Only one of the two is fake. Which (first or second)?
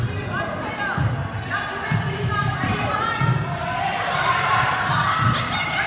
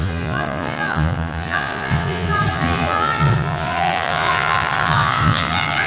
second